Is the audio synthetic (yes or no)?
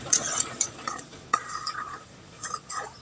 yes